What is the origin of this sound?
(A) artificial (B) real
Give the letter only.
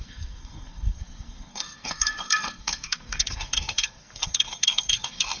A